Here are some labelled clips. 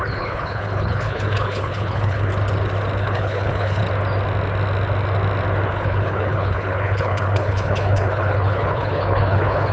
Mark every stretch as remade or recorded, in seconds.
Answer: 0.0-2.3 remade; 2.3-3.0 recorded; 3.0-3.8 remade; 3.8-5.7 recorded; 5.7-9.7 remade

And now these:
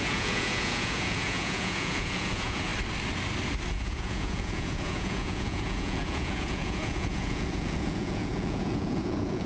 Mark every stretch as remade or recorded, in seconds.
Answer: 0.0-2.7 remade; 2.7-3.7 recorded; 3.7-9.5 remade